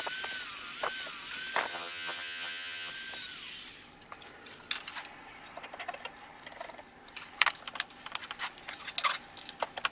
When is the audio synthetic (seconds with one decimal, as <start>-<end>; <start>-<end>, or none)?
1.7-2.9